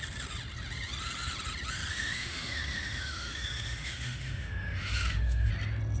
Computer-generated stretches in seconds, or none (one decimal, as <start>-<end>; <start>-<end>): 1.9-5.5